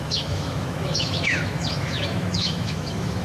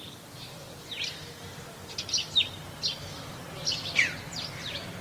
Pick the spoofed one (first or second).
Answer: first